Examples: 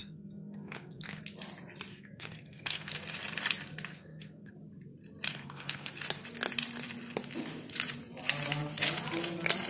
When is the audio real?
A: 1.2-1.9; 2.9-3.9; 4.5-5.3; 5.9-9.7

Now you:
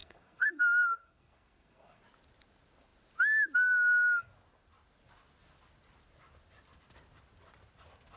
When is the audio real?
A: 2.0-8.2

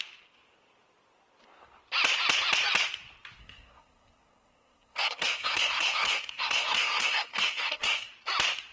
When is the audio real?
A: 0.0-3.4; 8.1-8.7

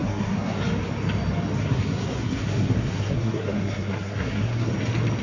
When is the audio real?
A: 0.6-1.6; 4.7-5.2

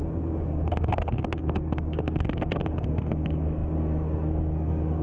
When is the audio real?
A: none

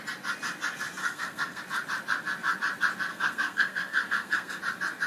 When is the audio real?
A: 0.0-1.0; 1.6-3.1; 4.6-5.1